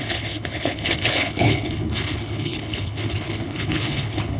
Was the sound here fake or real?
fake